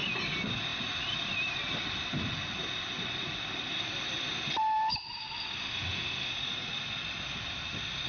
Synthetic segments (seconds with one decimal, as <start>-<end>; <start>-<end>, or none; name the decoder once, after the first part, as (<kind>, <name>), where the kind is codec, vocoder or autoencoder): 5.6-6.3 (autoencoder, DAC-VAE)